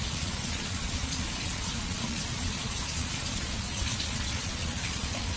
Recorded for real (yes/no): no